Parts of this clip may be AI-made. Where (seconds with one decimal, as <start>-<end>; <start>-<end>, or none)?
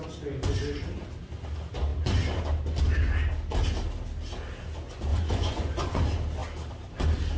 5.1-6.0